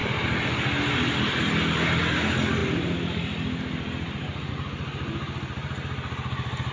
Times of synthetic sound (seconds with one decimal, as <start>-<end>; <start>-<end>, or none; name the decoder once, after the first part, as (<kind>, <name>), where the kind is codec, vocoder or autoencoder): none